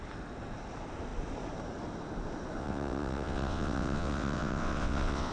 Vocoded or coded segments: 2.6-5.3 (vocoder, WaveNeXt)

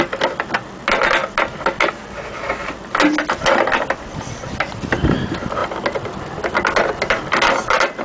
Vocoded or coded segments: none

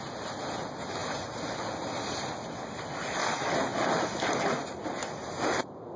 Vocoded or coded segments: none

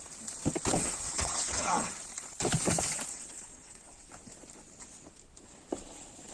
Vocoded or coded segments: 0.7-1.9 (vocoder, WaveNeXt); 3.1-4.1

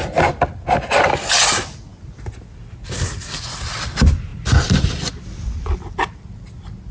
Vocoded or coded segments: none

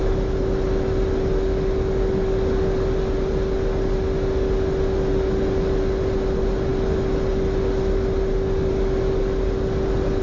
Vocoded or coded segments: none

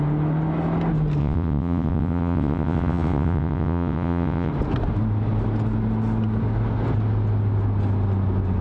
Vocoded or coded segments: 1.2-4.5 (vocoder, WaveNeXt)

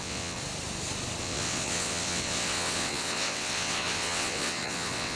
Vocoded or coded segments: 0.0-0.4 (vocoder, WaveNeXt); 1.2-5.2